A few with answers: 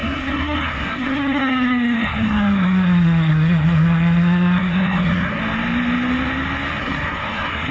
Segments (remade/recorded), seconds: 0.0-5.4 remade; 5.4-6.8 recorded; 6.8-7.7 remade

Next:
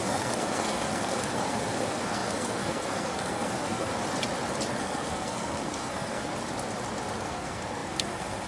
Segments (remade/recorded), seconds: 0.0-3.9 remade; 3.9-4.7 recorded; 4.7-6.3 remade; 6.3-7.2 recorded; 7.2-8.5 remade

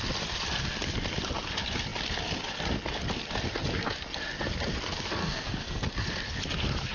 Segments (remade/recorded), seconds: 0.0-5.2 recorded; 5.2-5.8 remade; 5.8-6.9 recorded

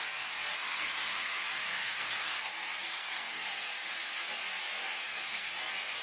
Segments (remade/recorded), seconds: 0.0-0.5 recorded; 0.5-1.4 remade; 1.4-1.8 recorded; 1.8-3.9 remade; 3.9-4.8 recorded; 4.8-5.5 remade; 5.5-6.0 recorded

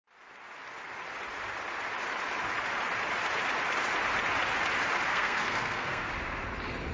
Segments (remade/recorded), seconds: 0.0-5.1 recorded; 5.1-6.1 remade; 6.1-6.9 recorded

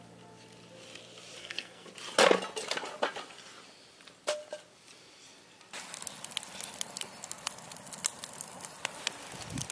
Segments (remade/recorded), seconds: 0.0-1.4 recorded; 1.4-1.9 remade; 1.9-9.7 recorded

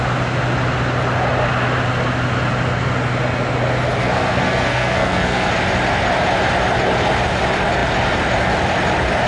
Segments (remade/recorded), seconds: 0.0-4.0 recorded; 4.0-5.5 remade; 5.5-9.3 recorded